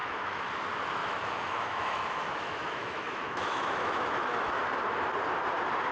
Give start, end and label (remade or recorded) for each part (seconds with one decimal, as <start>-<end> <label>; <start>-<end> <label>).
0.0-0.5 remade; 0.5-1.0 recorded; 1.0-4.5 remade; 4.5-5.9 recorded